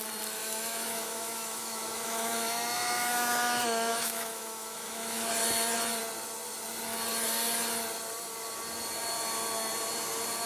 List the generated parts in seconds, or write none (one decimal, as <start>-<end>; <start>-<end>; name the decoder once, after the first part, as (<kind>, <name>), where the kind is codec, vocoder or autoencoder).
0.4-5.3 (autoencoder, DAC-VAE)

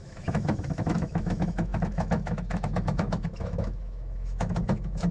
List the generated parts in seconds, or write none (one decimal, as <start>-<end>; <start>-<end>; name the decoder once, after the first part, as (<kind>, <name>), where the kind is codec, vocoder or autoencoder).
0.0-5.1 (autoencoder, DAC-VAE)

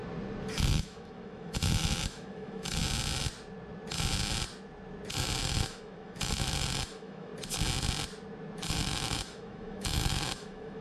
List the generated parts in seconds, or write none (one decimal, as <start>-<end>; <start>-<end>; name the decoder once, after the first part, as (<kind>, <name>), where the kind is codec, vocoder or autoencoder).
0.7-2.8 (autoencoder, DAC-VAE); 5.4-7.3; 8.7-10.8

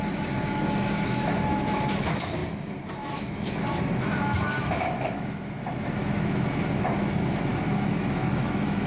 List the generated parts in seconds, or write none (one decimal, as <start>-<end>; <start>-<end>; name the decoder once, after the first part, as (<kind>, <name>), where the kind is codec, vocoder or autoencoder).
0.0-8.9 (autoencoder, DAC-VAE)

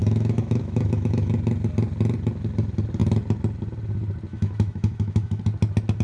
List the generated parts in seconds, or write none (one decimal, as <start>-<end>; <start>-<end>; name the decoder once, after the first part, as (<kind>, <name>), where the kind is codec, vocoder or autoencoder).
0.0-1.3 (autoencoder, DAC-VAE); 4.3-5.4

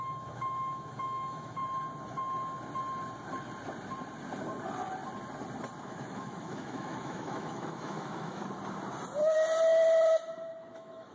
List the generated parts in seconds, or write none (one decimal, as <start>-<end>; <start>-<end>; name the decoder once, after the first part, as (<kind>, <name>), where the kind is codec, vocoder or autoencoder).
0.0-1.6 (autoencoder, DAC-VAE); 5.8-8.4; 10.7-11.1